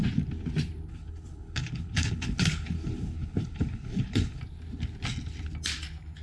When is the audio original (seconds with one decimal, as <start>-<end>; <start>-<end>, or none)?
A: 0.0-0.9; 4.4-6.2